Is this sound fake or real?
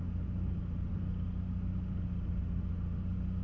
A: real